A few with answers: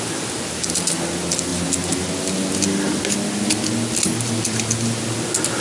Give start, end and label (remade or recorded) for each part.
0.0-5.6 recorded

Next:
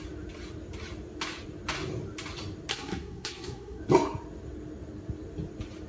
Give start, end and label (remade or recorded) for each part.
0.0-2.7 recorded; 2.7-3.8 remade; 3.8-5.9 recorded

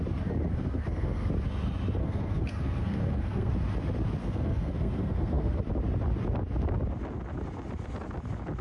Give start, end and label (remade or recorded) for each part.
0.0-0.5 recorded; 0.5-1.3 remade; 1.3-2.0 recorded; 2.0-3.5 remade; 3.5-4.2 recorded; 4.2-5.6 remade; 5.6-8.6 recorded